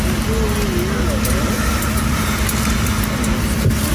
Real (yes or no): yes